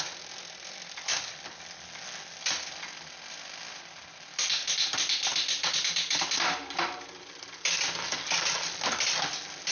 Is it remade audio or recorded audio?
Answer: recorded